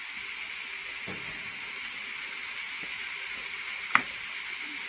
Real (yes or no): yes